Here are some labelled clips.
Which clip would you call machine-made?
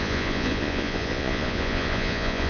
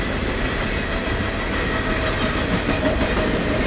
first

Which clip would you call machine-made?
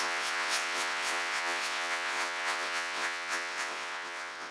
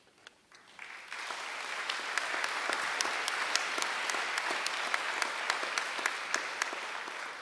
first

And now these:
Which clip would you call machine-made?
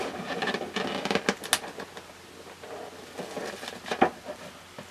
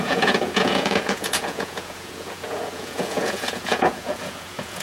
second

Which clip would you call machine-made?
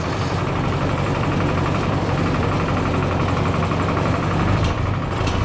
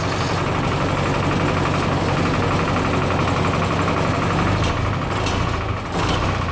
first